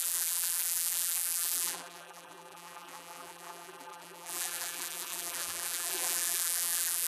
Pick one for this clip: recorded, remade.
remade